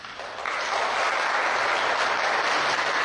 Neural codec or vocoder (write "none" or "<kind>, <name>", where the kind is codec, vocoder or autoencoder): none